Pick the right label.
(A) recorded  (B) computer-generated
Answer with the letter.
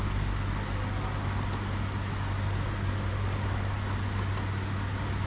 A